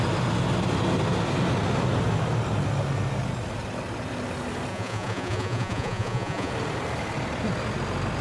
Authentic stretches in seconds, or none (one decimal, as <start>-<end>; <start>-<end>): 0.0-4.7; 6.5-8.2